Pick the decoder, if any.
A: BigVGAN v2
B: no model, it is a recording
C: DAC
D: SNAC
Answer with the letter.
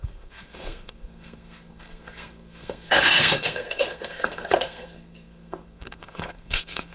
D